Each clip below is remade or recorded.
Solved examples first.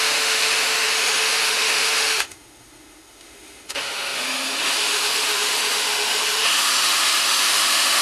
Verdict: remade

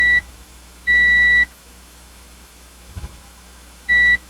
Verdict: remade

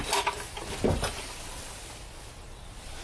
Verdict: recorded